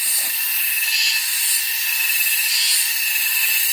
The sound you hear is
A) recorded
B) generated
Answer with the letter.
A